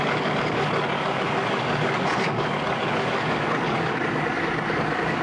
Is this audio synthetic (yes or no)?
yes